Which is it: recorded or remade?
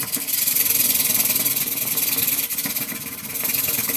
recorded